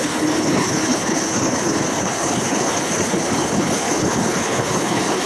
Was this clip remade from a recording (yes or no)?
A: yes